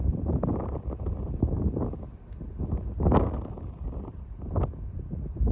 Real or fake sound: real